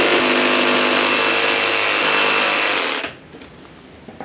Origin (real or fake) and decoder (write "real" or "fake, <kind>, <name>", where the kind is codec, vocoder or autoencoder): real